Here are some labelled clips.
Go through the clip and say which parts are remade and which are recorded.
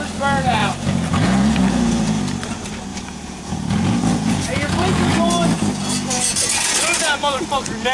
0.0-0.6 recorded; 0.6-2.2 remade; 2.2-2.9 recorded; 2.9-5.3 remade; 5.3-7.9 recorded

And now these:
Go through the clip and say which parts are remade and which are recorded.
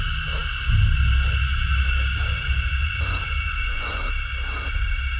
0.0-2.8 recorded; 2.8-4.0 remade; 4.0-5.2 recorded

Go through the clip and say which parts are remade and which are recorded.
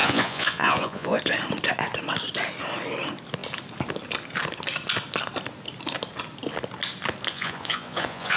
0.0-1.2 remade; 1.2-7.3 recorded; 7.3-8.4 remade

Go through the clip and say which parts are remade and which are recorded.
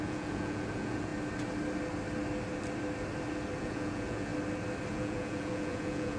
0.0-1.1 remade; 1.1-3.6 recorded; 3.6-4.3 remade; 4.3-4.9 recorded; 4.9-6.2 remade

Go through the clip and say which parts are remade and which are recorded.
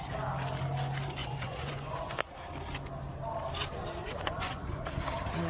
0.0-1.2 recorded; 1.2-2.2 remade; 2.2-4.0 recorded; 4.0-4.8 remade; 4.8-5.5 recorded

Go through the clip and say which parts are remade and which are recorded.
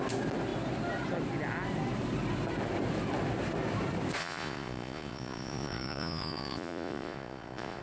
0.0-4.2 recorded; 4.2-7.8 remade